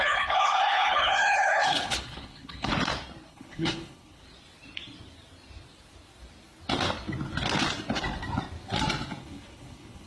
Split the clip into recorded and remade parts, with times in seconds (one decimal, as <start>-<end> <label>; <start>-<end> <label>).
0.0-2.7 remade; 2.7-3.3 recorded; 3.3-4.2 remade; 4.2-9.2 recorded; 9.2-10.1 remade